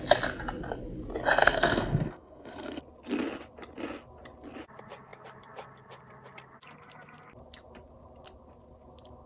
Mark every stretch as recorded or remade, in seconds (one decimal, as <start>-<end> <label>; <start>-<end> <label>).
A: 0.0-1.4 recorded; 1.4-2.8 remade; 2.8-9.3 recorded